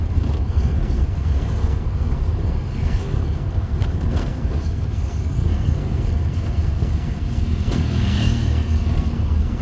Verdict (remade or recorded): remade